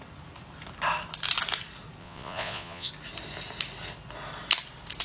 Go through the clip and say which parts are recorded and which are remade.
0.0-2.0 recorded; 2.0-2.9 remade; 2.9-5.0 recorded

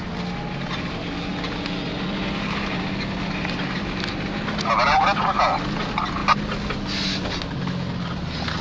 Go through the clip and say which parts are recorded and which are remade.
0.0-8.6 recorded